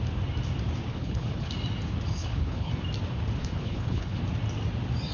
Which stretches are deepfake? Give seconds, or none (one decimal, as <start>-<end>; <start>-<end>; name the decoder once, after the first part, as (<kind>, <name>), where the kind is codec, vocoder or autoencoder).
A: 0.9-1.5 (codec, HILCodec); 2.1-2.7; 3.4-4.2